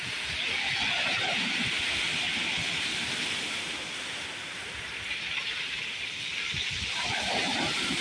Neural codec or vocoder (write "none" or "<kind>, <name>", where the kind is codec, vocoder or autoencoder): none